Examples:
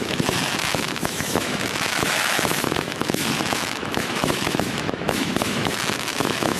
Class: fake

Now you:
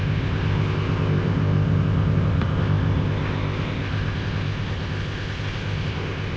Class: fake